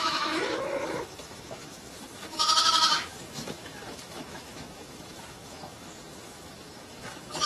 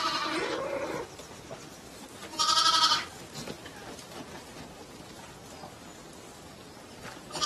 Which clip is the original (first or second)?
second